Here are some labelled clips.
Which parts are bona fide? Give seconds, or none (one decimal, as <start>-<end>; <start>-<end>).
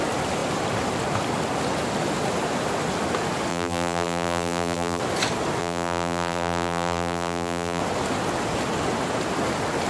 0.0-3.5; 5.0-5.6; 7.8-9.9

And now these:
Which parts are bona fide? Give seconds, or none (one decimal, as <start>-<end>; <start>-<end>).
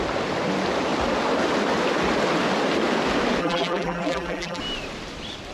0.0-3.4; 4.6-5.5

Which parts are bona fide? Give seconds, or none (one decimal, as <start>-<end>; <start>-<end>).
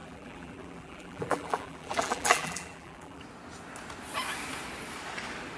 3.2-5.6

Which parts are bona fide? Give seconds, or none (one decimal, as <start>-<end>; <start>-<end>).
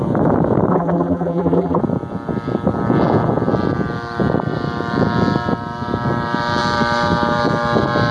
0.0-0.7; 1.8-8.1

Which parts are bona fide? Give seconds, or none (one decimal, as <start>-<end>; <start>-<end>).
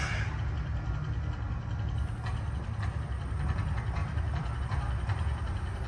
0.0-4.0; 4.6-5.9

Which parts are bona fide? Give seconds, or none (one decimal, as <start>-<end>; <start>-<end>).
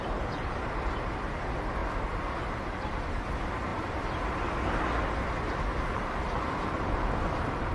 0.0-7.7